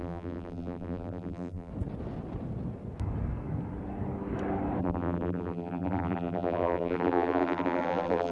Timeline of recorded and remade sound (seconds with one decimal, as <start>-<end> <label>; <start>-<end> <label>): 0.0-1.7 remade; 1.7-4.8 recorded; 4.8-8.3 remade